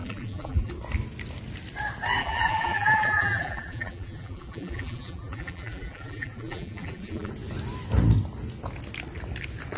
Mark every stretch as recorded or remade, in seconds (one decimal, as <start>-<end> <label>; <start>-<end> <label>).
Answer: 0.0-0.7 remade; 0.7-2.2 recorded; 2.2-7.3 remade; 7.3-9.8 recorded